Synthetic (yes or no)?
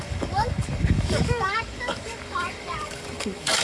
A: yes